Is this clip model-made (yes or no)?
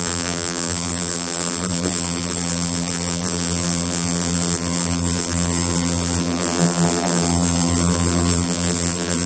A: yes